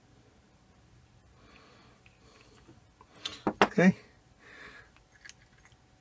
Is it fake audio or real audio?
real